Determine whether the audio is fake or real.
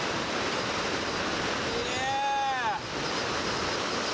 real